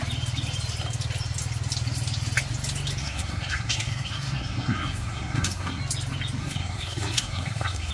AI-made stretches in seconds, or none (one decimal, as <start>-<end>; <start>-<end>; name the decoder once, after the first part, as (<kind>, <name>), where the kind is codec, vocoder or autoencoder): 3.0-5.8 (codec, SNAC); 6.4-7.9